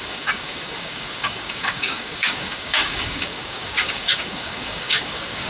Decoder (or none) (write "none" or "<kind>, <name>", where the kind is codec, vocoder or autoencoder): codec, DAC